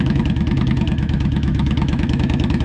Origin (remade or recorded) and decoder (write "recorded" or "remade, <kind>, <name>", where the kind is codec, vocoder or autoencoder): remade, autoencoder, DAC-VAE